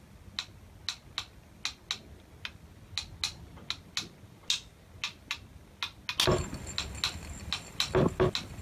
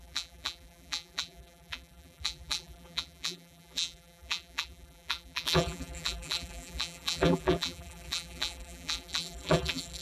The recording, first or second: first